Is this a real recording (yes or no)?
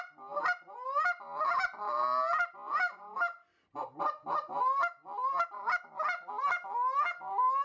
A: yes